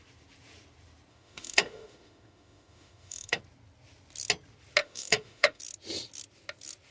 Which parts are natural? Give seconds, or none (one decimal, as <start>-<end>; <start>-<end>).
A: 0.0-1.1; 3.4-4.8; 5.6-6.9